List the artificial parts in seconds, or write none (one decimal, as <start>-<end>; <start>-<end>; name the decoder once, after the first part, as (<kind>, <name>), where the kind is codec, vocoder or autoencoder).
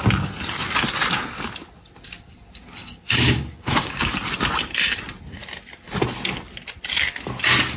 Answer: 2.8-4.0 (codec, DAC)